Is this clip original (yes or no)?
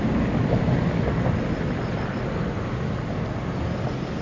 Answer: yes